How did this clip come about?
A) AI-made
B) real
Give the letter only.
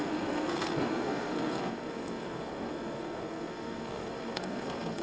A